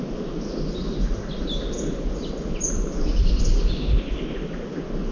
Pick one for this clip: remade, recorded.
recorded